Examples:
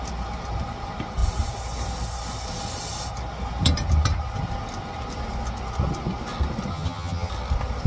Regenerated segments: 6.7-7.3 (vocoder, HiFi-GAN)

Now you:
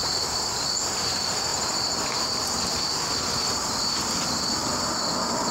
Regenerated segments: 0.0-0.7 (vocoder, BigVGAN v2)